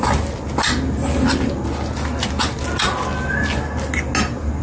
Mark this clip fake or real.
real